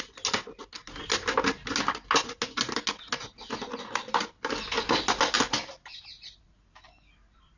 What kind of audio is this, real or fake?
real